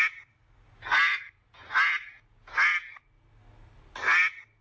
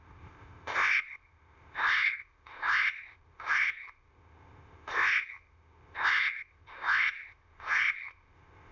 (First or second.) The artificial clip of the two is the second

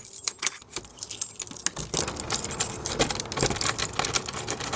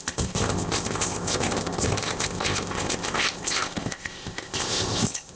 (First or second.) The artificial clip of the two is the second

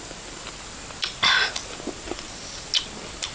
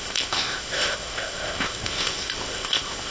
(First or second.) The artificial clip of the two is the second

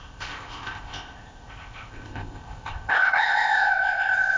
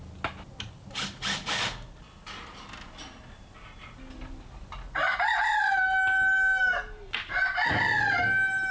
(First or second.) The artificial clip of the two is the first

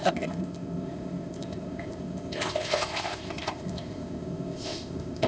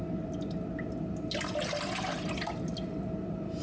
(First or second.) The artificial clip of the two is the first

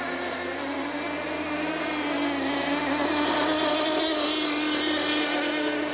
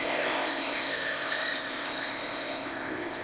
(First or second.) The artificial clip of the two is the second